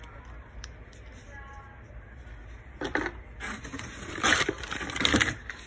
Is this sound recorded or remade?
recorded